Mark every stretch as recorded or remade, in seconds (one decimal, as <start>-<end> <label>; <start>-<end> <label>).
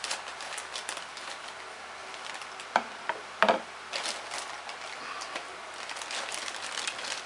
0.0-7.3 recorded